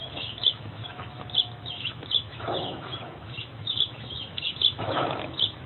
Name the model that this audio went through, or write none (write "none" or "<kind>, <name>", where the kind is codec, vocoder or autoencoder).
autoencoder, DAC-VAE